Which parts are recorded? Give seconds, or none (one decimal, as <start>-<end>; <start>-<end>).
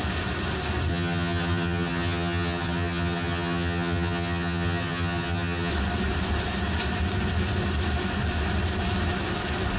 0.0-0.9; 5.7-9.8